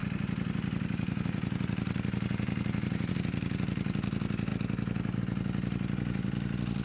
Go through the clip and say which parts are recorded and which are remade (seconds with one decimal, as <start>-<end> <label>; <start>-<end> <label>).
0.0-3.1 remade; 3.1-6.8 recorded